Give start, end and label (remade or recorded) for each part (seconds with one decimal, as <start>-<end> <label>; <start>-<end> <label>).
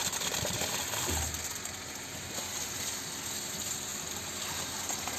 0.0-5.2 recorded